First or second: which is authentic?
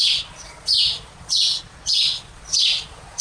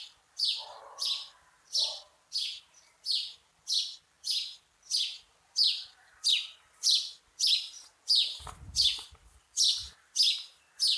second